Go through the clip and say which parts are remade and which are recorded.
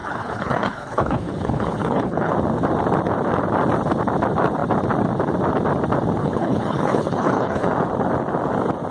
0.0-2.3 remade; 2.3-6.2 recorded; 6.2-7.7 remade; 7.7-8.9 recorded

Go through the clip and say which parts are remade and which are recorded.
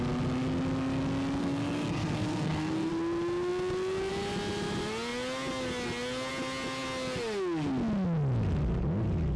0.0-1.4 recorded; 1.4-2.9 remade; 2.9-9.4 recorded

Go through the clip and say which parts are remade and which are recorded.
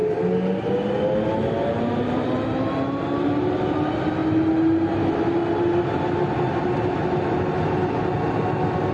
0.0-8.9 recorded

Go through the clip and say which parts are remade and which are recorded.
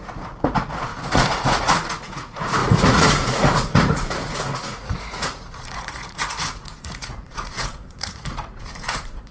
0.0-9.3 remade